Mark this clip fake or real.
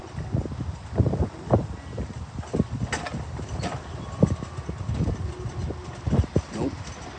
real